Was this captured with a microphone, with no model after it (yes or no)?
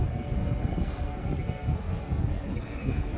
no